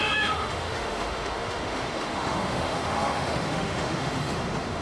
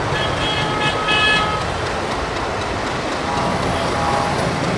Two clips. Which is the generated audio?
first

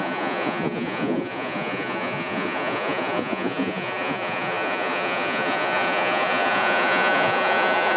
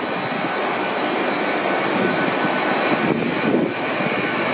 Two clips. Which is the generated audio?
first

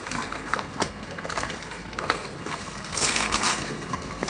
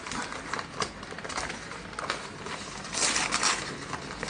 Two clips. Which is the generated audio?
first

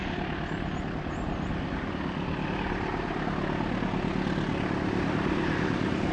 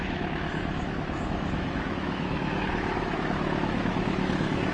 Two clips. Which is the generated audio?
second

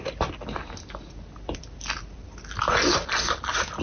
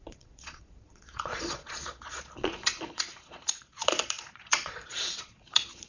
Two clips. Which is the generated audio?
second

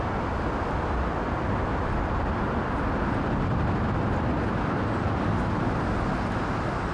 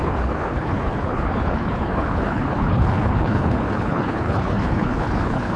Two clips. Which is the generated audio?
second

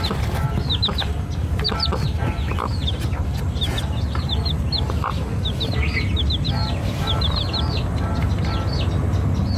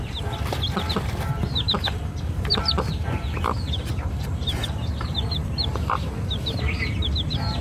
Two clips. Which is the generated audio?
second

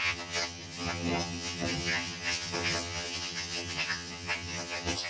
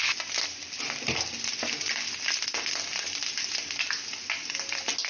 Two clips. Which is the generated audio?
first